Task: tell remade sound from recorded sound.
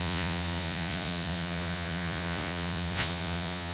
remade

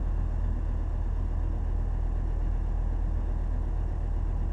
recorded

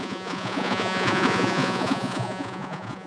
remade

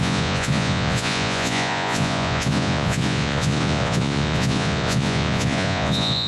remade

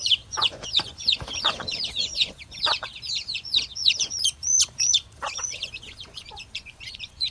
remade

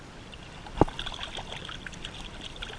recorded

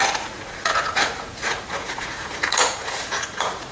remade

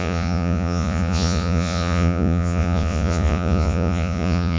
remade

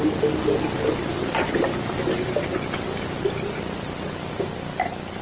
recorded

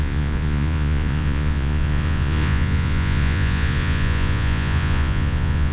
remade